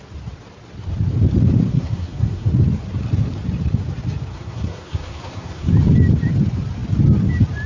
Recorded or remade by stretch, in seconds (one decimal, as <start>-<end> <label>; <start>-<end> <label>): 0.0-1.7 recorded; 1.7-2.5 remade; 2.5-4.3 recorded; 4.3-5.7 remade; 5.7-7.7 recorded